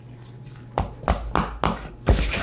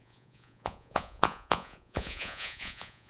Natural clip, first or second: first